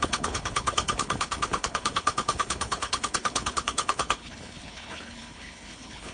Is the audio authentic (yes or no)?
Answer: no